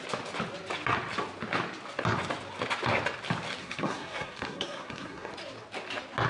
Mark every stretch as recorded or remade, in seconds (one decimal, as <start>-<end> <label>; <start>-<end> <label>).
0.0-3.6 recorded; 3.6-5.3 remade; 5.3-6.3 recorded

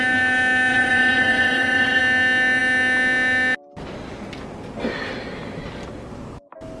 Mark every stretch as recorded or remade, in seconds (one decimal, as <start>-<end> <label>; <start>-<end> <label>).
0.0-0.7 recorded; 0.7-2.0 remade; 2.0-6.8 recorded

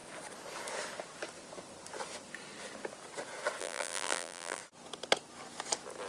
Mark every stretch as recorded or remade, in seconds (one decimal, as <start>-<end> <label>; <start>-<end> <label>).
0.0-3.6 recorded; 3.6-4.6 remade; 4.6-6.1 recorded

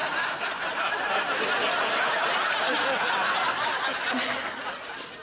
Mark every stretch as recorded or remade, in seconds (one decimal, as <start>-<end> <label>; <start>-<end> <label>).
0.0-3.2 recorded; 3.2-3.8 remade; 3.8-5.2 recorded

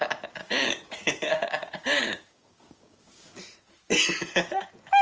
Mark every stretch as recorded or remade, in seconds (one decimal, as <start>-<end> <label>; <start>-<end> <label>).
0.0-0.4 recorded; 0.4-3.4 remade; 3.4-5.0 recorded

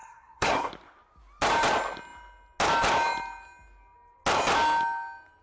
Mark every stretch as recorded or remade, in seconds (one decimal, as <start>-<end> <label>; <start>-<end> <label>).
0.0-0.7 remade; 0.7-5.4 recorded